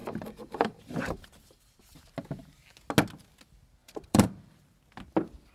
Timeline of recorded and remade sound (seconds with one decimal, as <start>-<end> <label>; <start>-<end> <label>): 0.0-2.0 remade; 2.0-3.8 recorded; 3.8-4.7 remade; 4.7-5.5 recorded